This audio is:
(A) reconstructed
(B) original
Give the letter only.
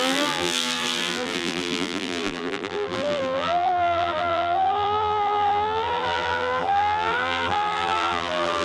A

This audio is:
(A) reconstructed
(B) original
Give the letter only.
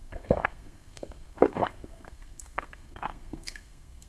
A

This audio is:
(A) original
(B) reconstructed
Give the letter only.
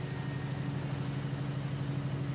A